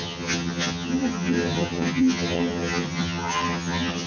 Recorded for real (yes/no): no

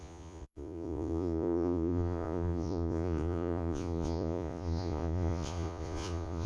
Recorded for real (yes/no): no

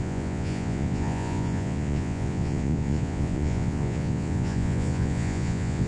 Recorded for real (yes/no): no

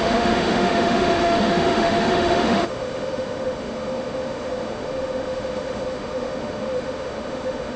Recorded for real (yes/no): no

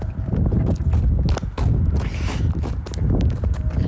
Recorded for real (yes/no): yes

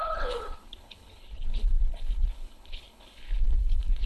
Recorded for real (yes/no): no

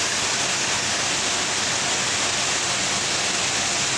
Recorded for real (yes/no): yes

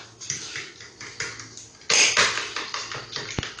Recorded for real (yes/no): yes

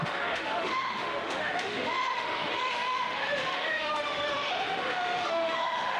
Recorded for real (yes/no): no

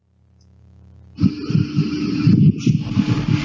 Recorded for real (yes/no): yes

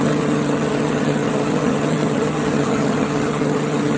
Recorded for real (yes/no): no